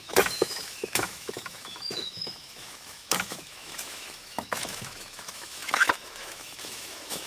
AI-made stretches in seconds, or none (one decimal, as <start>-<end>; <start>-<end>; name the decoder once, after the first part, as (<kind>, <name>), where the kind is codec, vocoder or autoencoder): 0.0-7.3 (autoencoder, DAC-VAE)